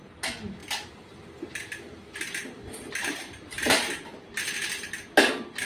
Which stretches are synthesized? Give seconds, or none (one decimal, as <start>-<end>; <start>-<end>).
3.0-3.9